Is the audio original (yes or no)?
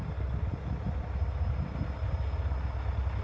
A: yes